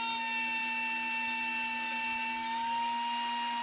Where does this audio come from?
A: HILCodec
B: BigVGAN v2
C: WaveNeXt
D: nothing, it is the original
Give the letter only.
D